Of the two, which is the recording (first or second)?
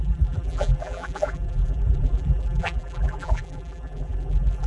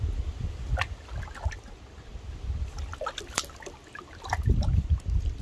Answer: second